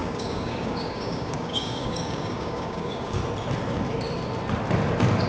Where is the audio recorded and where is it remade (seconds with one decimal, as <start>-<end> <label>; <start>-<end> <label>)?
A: 0.0-3.2 remade; 3.2-5.3 recorded